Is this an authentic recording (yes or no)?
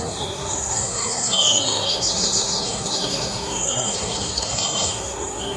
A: no